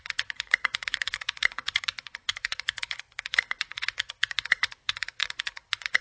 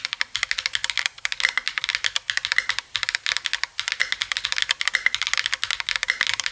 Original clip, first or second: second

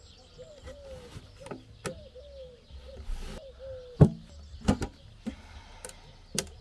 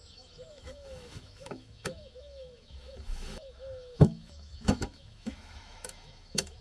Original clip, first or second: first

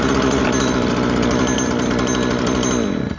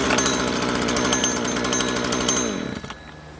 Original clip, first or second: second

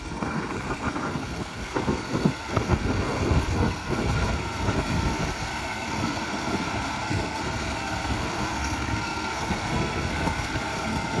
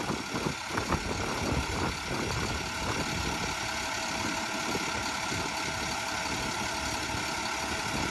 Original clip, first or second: second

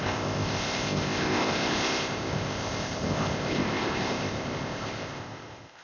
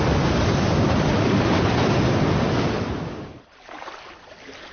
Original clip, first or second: second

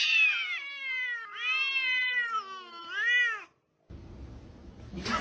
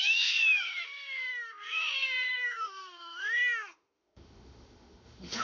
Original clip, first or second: first